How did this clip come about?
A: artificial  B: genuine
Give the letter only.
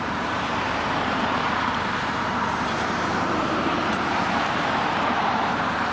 A